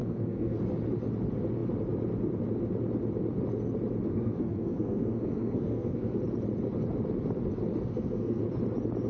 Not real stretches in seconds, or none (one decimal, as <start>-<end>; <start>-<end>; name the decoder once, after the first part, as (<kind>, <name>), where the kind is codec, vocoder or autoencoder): 0.0-0.6 (codec, SNAC); 4.1-6.2; 7.8-8.4

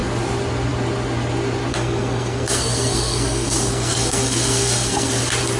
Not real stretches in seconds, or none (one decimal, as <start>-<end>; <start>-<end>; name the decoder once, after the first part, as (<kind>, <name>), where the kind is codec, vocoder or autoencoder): 1.7-5.1 (codec, SNAC)

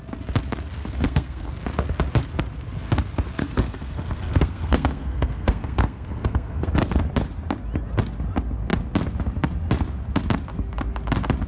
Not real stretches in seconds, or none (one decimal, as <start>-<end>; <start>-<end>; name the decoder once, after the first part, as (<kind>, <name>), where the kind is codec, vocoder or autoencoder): 0.8-1.5 (codec, SNAC); 3.4-7.0

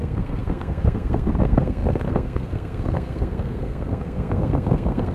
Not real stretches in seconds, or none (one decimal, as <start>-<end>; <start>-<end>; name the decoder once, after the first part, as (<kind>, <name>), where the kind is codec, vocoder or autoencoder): 0.0-5.1 (codec, SNAC)

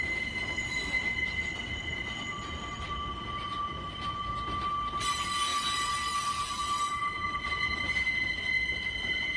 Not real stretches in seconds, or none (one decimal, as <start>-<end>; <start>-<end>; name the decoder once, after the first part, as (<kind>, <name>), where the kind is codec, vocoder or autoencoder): none

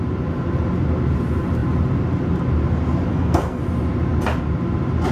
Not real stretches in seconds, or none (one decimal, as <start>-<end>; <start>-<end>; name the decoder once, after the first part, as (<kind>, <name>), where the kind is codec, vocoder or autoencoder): 3.1-3.6 (codec, SNAC)